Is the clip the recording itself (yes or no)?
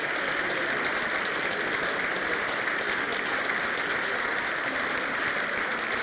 yes